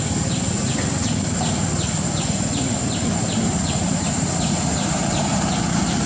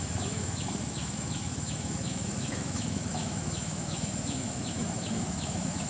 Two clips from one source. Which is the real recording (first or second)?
first